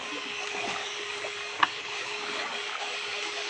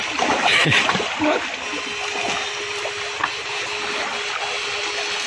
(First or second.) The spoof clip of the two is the first